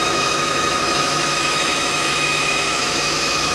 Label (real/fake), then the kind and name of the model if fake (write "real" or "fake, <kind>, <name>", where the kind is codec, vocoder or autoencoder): fake, autoencoder, DAC-VAE